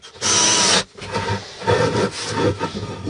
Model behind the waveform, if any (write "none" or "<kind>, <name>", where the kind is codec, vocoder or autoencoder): none